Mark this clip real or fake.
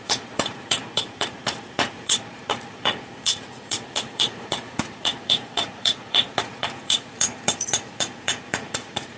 fake